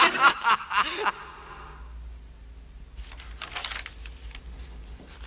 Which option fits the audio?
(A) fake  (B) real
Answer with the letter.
B